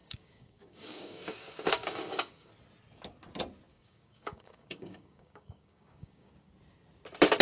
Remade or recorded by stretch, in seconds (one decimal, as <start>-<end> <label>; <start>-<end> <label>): 0.0-2.5 remade; 2.5-3.7 recorded; 3.7-6.3 remade; 6.3-7.4 recorded